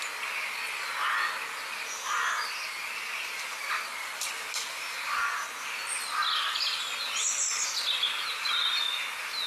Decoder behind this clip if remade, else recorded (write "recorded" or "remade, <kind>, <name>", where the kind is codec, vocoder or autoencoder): recorded